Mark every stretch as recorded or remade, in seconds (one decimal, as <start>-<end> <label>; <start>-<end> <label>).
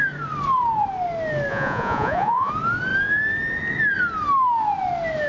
0.0-1.5 recorded; 1.5-2.5 remade; 2.5-5.3 recorded